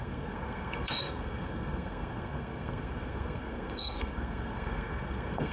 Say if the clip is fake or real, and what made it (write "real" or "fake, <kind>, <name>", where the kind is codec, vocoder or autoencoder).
fake, codec, SNAC